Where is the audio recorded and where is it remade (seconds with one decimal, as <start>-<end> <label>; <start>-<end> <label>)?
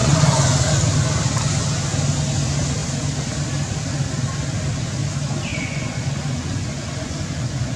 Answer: 0.0-0.7 remade; 0.7-5.5 recorded; 5.5-7.8 remade